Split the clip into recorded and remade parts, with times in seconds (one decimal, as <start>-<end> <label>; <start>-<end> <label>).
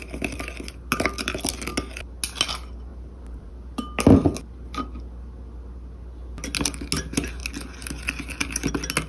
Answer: 0.0-2.9 recorded; 2.9-3.5 remade; 3.5-9.1 recorded